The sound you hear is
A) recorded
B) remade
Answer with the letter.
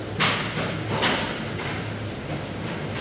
A